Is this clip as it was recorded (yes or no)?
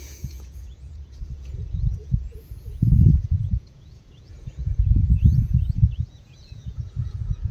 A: no